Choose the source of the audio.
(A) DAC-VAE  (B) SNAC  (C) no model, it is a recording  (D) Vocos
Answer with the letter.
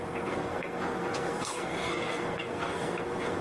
B